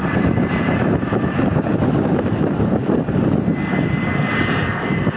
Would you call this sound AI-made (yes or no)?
no